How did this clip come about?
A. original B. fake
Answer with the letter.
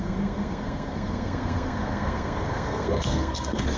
B